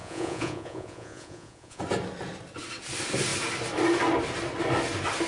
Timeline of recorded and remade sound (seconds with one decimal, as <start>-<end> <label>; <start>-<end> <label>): 0.0-1.8 remade; 1.8-5.3 recorded